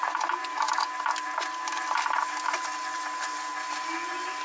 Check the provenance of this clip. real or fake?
real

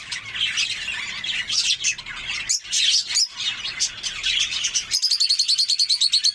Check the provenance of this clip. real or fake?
real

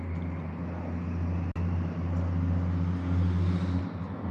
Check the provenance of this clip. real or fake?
real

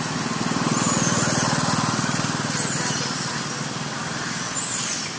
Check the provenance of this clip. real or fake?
real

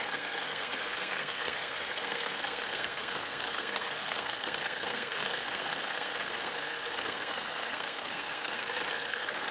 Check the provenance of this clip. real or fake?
fake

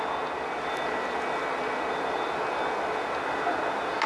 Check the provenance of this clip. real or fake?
real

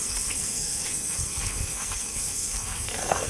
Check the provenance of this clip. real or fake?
fake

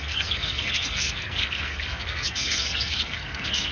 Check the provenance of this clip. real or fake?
fake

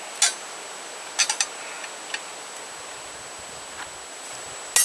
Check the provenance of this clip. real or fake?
real